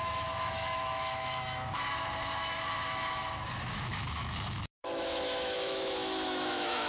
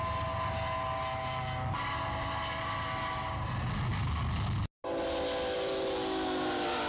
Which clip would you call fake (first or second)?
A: first